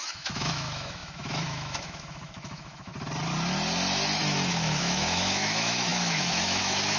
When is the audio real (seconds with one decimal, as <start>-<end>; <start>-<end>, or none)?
2.9-4.5